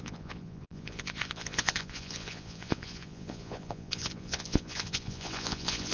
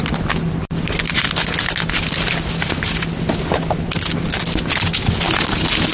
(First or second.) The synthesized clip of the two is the first